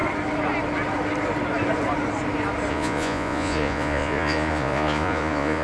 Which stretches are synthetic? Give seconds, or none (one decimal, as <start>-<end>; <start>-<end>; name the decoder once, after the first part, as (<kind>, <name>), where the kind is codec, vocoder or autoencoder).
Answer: 2.7-5.6 (vocoder, Vocos)